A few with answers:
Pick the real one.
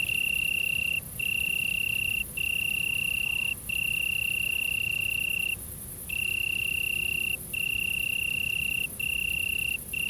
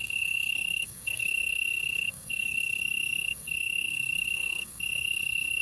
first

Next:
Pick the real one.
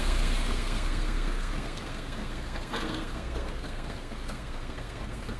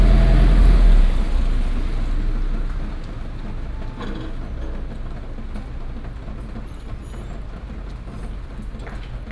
second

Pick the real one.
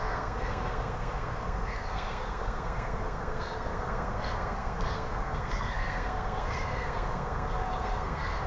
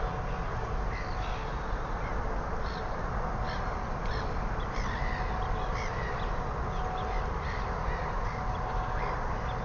second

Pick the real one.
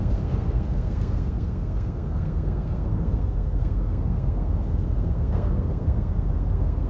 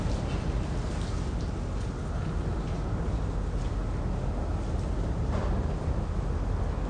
second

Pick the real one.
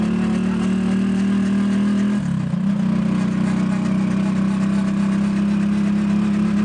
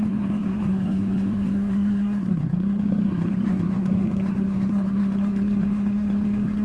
first